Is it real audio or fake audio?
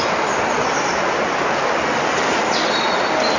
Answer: real